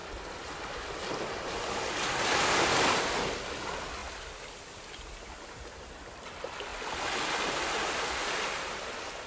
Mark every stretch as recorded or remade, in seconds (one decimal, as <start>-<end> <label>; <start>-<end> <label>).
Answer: 0.0-9.3 recorded